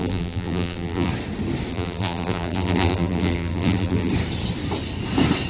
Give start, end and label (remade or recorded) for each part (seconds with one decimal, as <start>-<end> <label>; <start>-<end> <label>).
0.0-1.1 remade; 1.1-1.7 recorded; 1.7-4.1 remade; 4.1-5.5 recorded